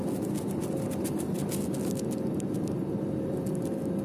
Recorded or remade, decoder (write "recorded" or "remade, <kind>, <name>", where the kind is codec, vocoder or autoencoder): recorded